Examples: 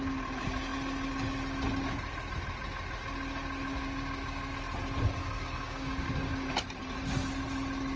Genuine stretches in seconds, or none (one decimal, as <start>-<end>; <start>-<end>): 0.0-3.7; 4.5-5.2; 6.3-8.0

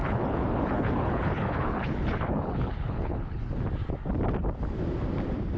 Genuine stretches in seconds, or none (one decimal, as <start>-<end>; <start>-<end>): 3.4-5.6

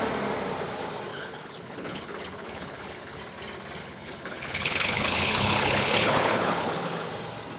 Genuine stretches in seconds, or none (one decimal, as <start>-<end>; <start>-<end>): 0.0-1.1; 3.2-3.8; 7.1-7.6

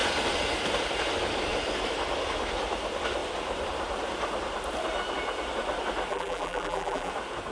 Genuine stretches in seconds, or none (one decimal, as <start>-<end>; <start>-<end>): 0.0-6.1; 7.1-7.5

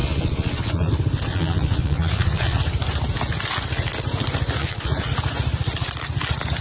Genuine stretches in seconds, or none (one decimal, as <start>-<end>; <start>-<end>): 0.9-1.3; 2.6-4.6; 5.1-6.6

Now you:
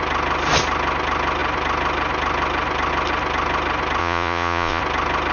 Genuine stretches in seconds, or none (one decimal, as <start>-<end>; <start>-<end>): 0.0-4.0; 4.8-5.3